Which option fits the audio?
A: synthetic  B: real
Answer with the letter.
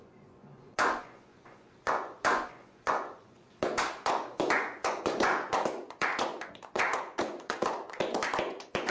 A